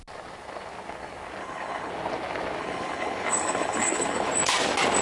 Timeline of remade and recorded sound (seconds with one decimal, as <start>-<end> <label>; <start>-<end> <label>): 0.0-1.4 recorded; 1.4-1.9 remade; 1.9-2.6 recorded; 2.6-4.3 remade; 4.3-5.0 recorded